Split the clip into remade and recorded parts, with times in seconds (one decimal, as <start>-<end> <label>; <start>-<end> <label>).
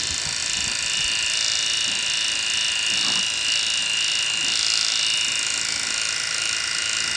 0.0-7.2 recorded